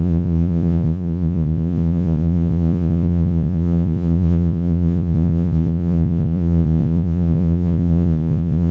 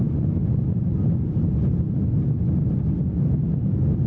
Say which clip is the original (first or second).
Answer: second